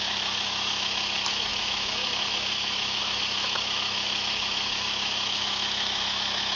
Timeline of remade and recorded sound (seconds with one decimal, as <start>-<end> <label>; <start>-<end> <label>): 0.0-6.6 remade